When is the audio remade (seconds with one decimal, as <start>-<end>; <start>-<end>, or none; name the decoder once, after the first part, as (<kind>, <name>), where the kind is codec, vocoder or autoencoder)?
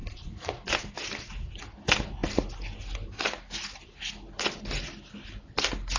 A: 0.0-0.7 (vocoder, Vocos)